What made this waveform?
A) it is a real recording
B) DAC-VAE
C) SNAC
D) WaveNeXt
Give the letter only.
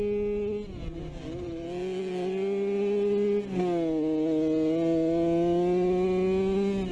A